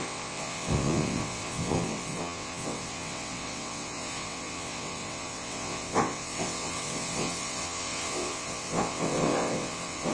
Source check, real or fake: fake